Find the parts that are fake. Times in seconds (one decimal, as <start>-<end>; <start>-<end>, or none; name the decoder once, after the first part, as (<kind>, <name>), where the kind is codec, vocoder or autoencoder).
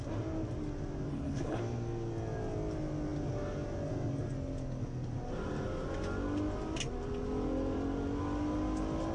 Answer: 1.1-1.6 (codec, HILCodec)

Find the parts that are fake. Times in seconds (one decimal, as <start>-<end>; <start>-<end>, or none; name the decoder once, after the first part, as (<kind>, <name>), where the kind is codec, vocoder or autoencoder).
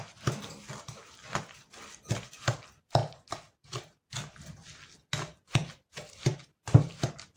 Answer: none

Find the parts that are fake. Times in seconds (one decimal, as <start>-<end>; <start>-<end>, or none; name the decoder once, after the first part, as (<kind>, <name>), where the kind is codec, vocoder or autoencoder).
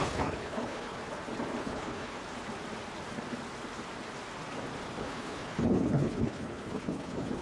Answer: 0.0-1.0 (codec, HILCodec); 1.6-2.2; 5.0-7.4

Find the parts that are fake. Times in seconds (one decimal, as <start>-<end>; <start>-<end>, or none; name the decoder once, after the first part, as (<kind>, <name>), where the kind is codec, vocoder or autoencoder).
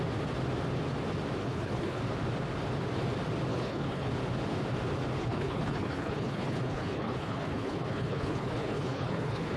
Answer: 1.4-2.0 (codec, HILCodec); 3.5-4.1; 5.2-9.6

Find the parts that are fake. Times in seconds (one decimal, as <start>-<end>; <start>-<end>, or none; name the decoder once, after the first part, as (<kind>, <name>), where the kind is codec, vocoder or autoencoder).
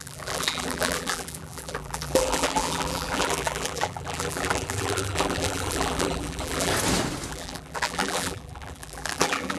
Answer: 0.0-6.7 (vocoder, BigVGAN v2); 7.3-9.6